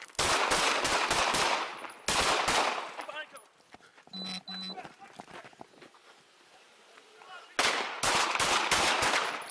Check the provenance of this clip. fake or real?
real